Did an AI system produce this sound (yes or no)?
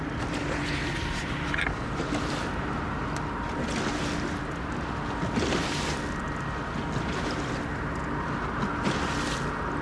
no